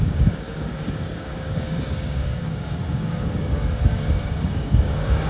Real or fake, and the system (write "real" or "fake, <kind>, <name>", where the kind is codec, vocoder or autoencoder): fake, codec, DAC